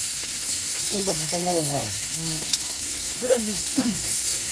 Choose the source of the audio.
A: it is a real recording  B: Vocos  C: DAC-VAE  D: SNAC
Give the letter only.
D